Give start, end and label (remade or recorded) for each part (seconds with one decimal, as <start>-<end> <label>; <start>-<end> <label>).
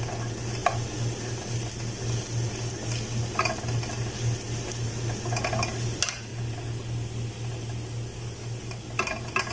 0.0-9.5 recorded